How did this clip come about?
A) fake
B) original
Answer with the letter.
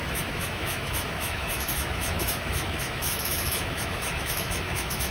A